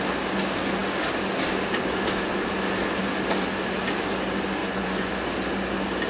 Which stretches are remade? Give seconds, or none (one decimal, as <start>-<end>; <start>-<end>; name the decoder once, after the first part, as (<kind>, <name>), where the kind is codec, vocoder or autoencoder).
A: 4.6-5.1 (vocoder, Vocos)